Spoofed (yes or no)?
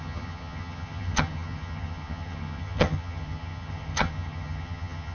yes